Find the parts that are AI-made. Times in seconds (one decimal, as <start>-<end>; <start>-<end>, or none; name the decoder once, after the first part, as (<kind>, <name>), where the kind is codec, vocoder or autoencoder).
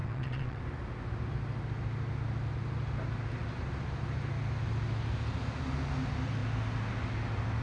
0.0-0.6 (vocoder, WaveNeXt)